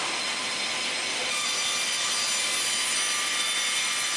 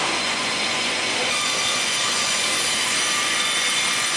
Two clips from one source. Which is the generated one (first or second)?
second